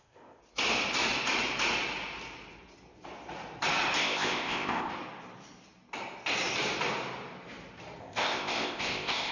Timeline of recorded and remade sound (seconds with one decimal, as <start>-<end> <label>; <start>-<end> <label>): 0.0-0.4 remade; 0.4-4.0 recorded; 4.0-4.9 remade; 4.9-8.0 recorded; 8.0-9.3 remade